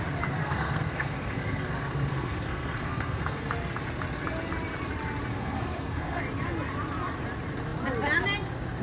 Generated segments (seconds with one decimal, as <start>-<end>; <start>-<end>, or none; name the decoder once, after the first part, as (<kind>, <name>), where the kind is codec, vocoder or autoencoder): 0.4-3.5 (codec, SNAC); 5.3-6.2